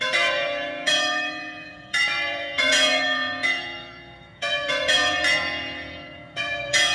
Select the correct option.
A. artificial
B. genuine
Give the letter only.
A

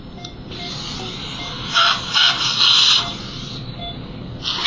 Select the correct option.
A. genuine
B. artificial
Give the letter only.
A